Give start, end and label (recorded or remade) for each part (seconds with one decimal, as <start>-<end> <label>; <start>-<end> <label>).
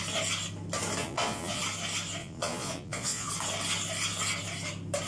0.0-1.0 recorded; 1.0-1.6 remade; 1.6-2.2 recorded; 2.2-3.3 remade; 3.3-5.1 recorded